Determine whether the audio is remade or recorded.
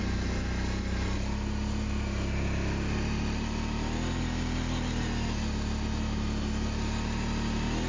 recorded